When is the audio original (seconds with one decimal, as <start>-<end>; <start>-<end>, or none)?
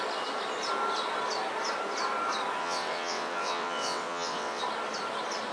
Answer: 0.0-2.6; 4.6-5.5